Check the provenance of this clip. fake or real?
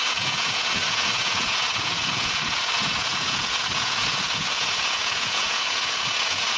fake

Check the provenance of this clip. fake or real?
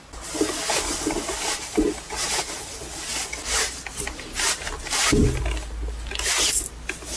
real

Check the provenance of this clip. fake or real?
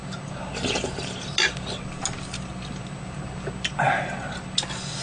real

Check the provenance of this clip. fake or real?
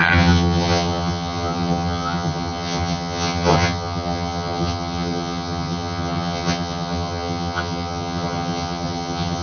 fake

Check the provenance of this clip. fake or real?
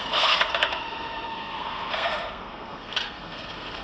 fake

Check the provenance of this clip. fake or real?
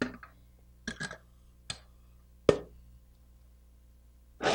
real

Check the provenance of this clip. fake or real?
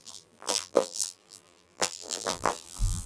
fake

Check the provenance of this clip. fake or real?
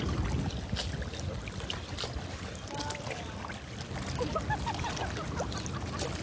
real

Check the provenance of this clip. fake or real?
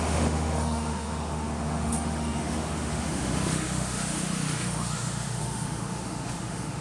fake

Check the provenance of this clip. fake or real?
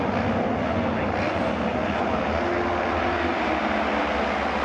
real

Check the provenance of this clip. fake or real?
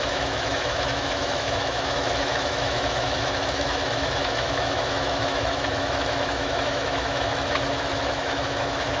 fake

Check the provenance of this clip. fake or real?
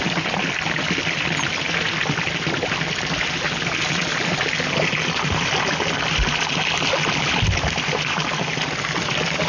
real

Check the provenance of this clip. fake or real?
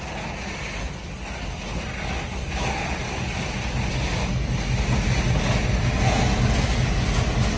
real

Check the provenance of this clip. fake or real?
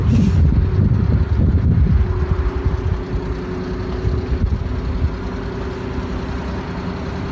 real